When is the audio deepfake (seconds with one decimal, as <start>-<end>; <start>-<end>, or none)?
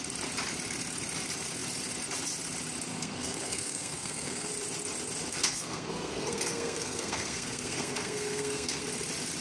2.9-4.5; 5.3-8.8